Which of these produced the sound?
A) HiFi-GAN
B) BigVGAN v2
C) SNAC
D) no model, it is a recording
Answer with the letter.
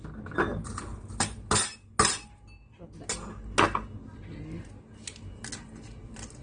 D